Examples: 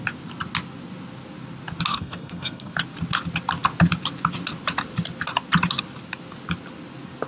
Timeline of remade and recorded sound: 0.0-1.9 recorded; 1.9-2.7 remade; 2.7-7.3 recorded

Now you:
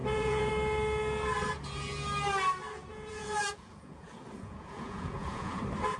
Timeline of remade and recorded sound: 0.0-0.5 remade; 0.5-2.9 recorded; 2.9-5.6 remade; 5.6-6.0 recorded

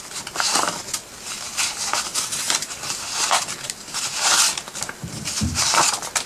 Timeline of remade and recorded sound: 0.0-6.3 recorded

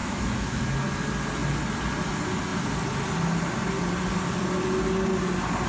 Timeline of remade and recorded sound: 0.0-0.7 remade; 0.7-5.7 recorded

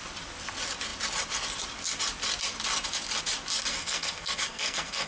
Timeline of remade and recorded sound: 0.0-3.7 recorded; 3.7-5.1 remade

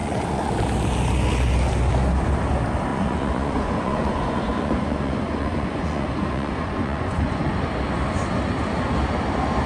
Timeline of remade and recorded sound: 0.0-0.5 remade; 0.5-2.9 recorded; 2.9-7.5 remade; 7.5-9.7 recorded

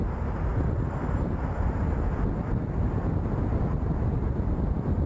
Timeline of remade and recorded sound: 0.0-0.5 recorded; 0.5-3.2 remade; 3.2-5.1 recorded